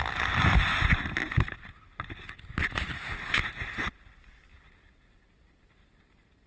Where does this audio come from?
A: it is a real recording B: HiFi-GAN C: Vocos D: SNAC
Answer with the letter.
A